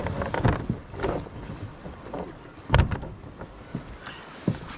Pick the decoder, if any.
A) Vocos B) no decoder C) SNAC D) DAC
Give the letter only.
B